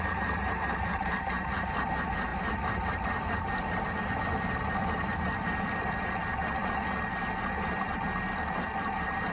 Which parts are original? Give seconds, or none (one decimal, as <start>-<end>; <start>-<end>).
0.0-2.3; 5.9-9.3